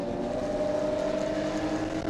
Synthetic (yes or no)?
no